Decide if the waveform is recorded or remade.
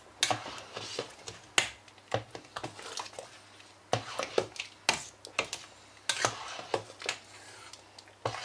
recorded